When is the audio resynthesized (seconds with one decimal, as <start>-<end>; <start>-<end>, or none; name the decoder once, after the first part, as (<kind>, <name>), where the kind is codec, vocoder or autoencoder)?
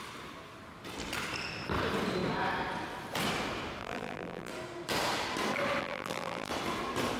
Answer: 3.8-4.5 (vocoder, BigVGAN v2); 5.8-6.5